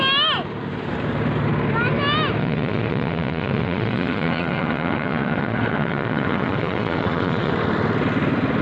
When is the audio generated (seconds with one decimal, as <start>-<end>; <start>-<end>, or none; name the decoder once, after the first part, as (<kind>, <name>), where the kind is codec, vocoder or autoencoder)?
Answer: 2.4-7.5 (vocoder, Vocos)